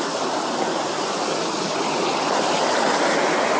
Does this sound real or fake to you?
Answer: real